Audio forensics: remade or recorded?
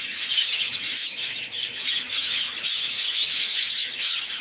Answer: remade